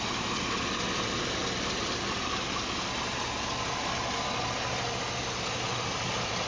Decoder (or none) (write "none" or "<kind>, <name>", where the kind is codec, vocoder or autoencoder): none